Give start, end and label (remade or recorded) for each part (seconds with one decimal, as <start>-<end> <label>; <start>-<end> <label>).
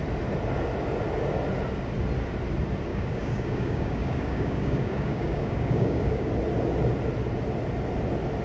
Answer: 0.0-2.9 recorded; 2.9-6.3 remade; 6.3-8.4 recorded